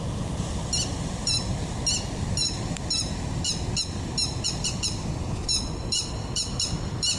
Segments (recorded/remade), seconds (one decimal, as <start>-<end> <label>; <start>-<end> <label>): 0.0-0.9 recorded; 0.9-1.5 remade; 1.5-2.4 recorded; 2.4-2.9 remade; 2.9-4.3 recorded; 4.3-7.2 remade